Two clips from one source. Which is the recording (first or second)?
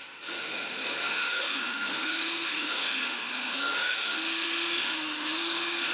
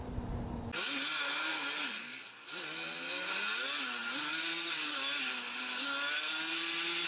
second